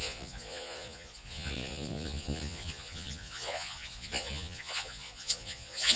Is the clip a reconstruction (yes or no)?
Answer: yes